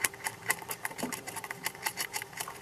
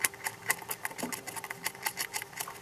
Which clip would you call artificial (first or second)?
first